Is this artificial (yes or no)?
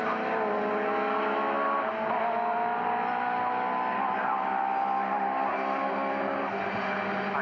no